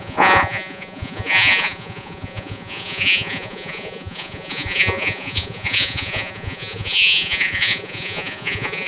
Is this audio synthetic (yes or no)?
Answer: yes